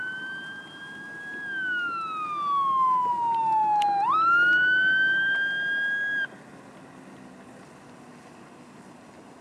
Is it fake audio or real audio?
real